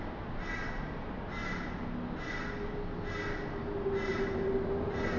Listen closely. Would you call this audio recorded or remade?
recorded